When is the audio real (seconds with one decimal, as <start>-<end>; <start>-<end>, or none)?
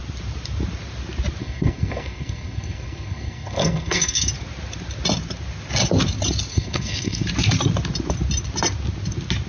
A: 0.0-1.4; 4.3-6.5; 7.2-9.5